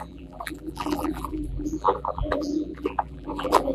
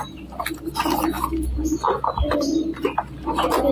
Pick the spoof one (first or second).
first